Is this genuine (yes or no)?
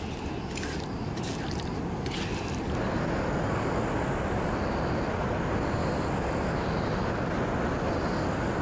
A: yes